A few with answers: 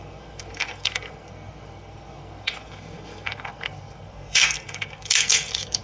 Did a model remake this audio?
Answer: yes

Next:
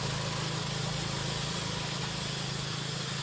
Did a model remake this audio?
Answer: no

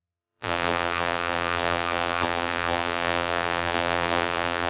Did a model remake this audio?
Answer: yes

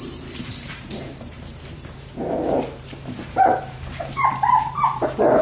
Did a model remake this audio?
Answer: yes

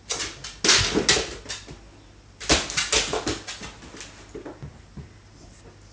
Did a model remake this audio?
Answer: no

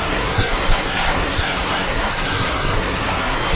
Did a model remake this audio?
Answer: yes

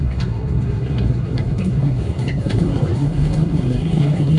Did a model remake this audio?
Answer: yes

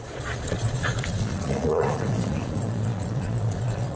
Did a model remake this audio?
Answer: yes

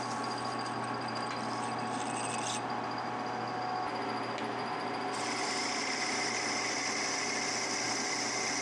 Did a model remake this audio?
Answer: no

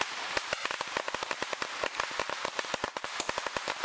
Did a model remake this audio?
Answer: no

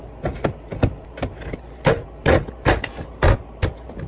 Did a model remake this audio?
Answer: no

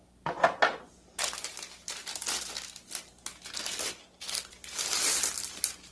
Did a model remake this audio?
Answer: no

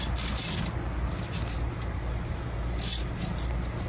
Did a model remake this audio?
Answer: no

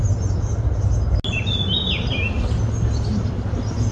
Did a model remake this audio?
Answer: no